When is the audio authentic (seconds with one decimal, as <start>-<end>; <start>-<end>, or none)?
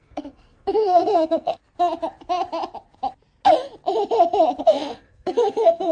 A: 1.6-4.6